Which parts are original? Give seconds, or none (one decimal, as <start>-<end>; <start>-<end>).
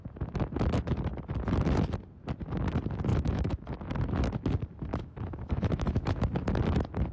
0.0-3.1; 3.7-4.9; 6.2-7.1